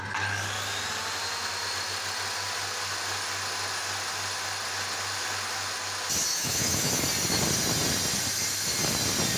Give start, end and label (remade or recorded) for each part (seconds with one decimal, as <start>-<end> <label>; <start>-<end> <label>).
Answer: 0.0-6.3 recorded; 6.3-6.9 remade; 6.9-9.4 recorded